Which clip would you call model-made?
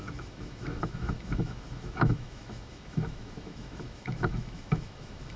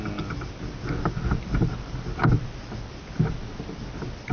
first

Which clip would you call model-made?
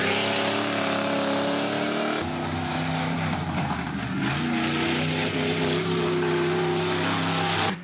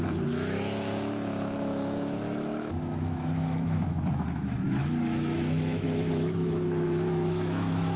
second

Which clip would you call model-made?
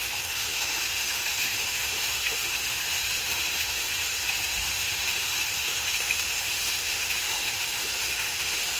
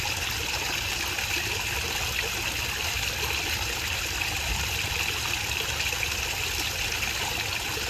first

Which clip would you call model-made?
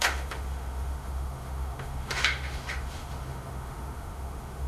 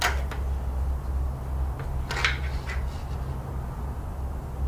first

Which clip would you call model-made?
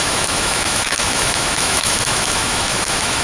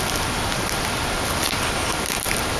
first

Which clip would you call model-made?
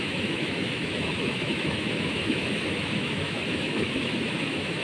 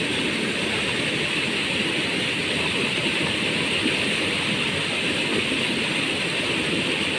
first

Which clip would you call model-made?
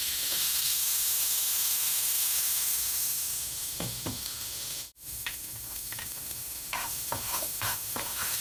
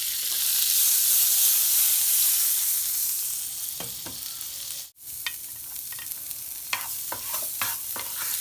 first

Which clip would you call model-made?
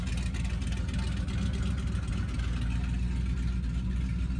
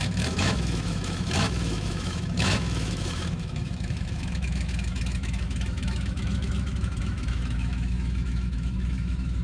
second